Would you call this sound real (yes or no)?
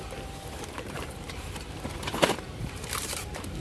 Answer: no